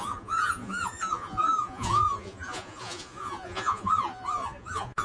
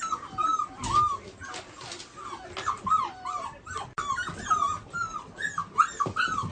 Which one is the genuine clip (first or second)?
second